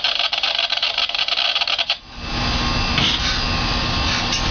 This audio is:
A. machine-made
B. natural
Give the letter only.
B